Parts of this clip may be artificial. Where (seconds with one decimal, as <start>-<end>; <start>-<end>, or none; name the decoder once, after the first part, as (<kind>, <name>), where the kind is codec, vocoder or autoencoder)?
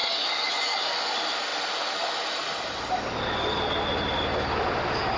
none